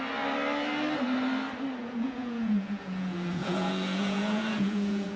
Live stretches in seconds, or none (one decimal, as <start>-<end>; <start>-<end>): 0.0-1.8